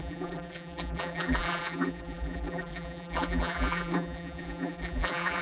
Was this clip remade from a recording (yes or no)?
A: yes